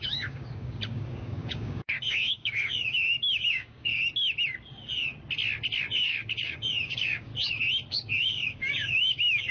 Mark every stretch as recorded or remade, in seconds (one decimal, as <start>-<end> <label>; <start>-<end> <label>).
0.0-3.9 remade; 3.9-5.8 recorded; 5.8-7.3 remade; 7.3-7.9 recorded; 7.9-9.5 remade